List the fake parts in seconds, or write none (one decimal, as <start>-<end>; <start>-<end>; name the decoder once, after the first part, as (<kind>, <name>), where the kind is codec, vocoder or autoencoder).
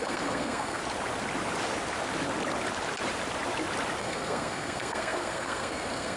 0.0-0.8 (codec, SNAC); 4.0-6.2